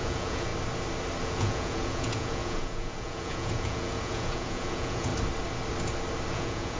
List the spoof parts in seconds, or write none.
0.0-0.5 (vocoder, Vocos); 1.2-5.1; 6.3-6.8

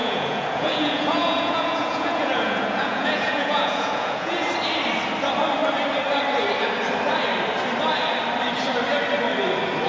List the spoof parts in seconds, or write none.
0.0-4.5 (vocoder, Vocos)

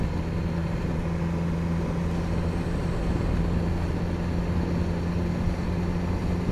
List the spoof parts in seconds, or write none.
none

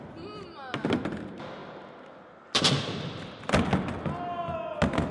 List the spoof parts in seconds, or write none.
none

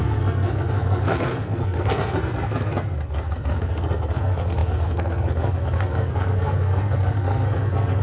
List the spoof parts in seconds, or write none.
0.0-8.0 (codec, SNAC)